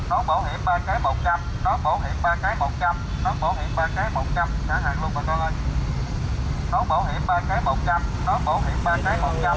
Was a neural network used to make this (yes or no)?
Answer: no